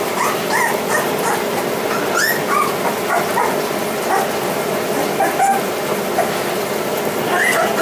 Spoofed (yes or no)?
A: no